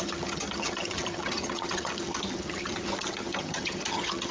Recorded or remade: remade